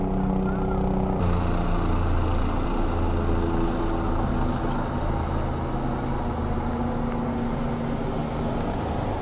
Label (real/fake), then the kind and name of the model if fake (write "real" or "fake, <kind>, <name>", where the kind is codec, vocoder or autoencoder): real